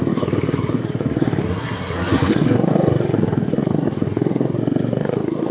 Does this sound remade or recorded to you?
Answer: remade